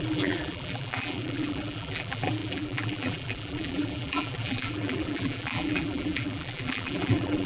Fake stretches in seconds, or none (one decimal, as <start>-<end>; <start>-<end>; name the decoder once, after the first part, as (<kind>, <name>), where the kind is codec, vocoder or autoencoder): 0.0-7.5 (vocoder, BigVGAN v2)